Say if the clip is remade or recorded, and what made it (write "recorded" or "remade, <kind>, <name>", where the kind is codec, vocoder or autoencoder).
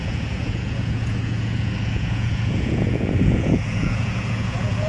remade, vocoder, Vocos